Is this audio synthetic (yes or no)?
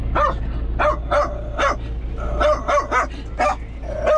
no